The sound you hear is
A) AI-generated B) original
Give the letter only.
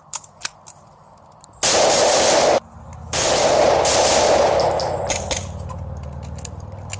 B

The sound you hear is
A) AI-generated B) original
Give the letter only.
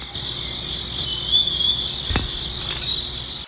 B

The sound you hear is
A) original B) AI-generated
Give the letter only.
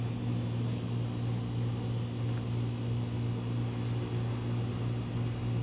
A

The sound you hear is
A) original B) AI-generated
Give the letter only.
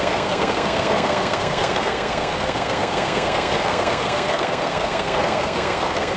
B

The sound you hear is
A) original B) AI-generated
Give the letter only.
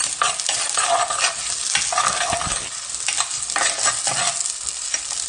A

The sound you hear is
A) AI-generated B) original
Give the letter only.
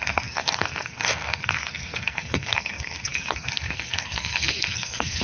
A